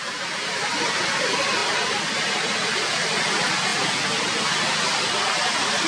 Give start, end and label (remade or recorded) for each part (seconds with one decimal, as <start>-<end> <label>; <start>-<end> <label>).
0.0-5.9 recorded